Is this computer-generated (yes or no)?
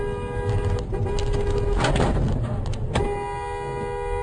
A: no